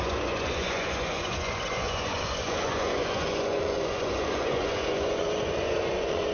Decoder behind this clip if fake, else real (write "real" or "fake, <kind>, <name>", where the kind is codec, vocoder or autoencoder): fake, vocoder, Vocos